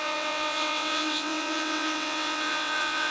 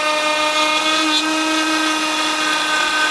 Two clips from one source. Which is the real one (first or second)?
second